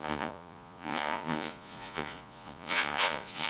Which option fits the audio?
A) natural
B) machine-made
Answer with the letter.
B